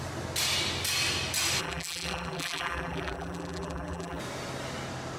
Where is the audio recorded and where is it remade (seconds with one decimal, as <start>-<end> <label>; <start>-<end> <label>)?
0.0-1.6 recorded; 1.6-4.2 remade; 4.2-5.2 recorded

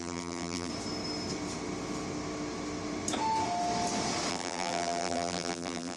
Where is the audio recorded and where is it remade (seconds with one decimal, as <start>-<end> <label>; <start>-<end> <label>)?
0.0-0.7 remade; 0.7-4.3 recorded; 4.3-6.0 remade

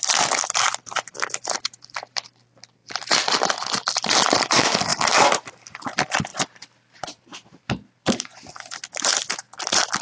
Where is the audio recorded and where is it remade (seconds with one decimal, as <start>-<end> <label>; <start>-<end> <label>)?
0.0-10.0 recorded

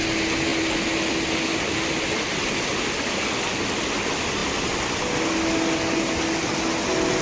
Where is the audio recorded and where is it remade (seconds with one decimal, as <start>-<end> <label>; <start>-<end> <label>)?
0.0-4.4 recorded; 4.4-5.2 remade; 5.2-7.2 recorded

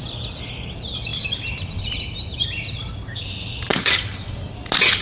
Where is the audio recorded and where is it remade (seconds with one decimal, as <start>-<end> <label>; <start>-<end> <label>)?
0.0-1.1 recorded; 1.1-2.9 remade; 2.9-5.0 recorded

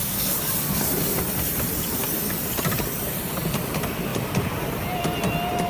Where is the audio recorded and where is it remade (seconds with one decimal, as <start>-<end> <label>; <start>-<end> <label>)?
0.0-4.1 recorded; 4.1-5.0 remade; 5.0-5.7 recorded